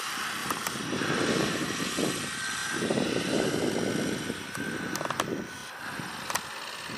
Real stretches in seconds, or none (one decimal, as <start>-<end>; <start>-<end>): 0.0-0.4; 1.8-2.6; 3.6-7.0